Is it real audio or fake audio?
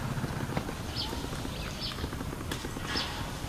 real